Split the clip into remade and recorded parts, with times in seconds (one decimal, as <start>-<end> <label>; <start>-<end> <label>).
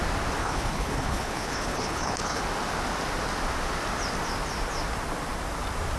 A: 0.0-0.4 recorded; 0.4-2.4 remade; 2.4-6.0 recorded